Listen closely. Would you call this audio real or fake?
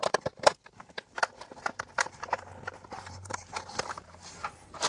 fake